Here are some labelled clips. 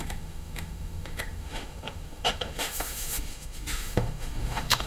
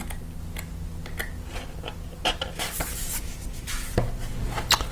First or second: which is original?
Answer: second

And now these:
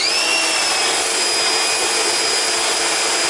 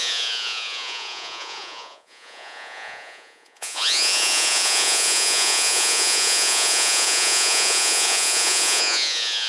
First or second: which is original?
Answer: first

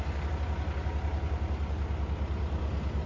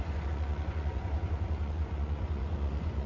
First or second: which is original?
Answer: first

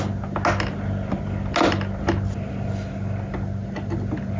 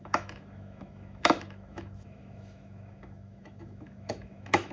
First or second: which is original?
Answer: first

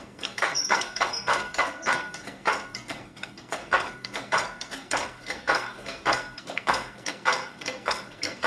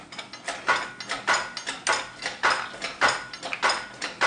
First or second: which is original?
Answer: second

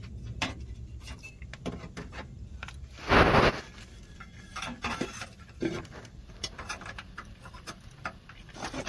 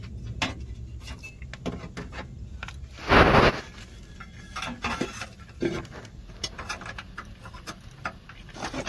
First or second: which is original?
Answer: second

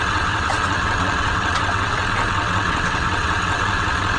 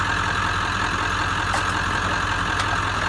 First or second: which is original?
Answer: second